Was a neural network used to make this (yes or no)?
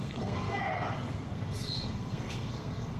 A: yes